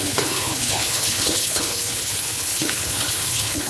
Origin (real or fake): fake